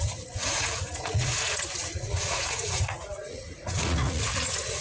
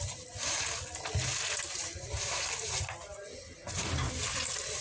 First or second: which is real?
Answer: second